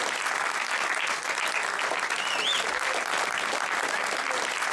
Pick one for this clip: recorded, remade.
recorded